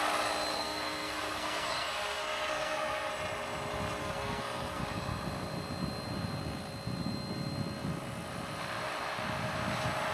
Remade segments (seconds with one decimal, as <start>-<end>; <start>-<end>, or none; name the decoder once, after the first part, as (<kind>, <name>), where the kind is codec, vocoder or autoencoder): 0.5-3.1 (codec, SNAC); 4.0-4.8